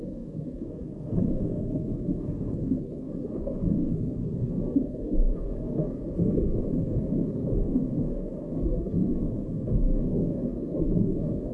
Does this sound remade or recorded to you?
remade